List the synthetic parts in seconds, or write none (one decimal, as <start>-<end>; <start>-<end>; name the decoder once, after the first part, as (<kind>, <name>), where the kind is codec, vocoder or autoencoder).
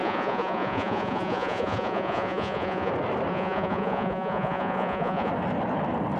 0.0-2.9 (vocoder, Vocos); 3.3-5.3